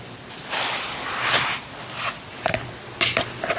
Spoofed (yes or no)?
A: no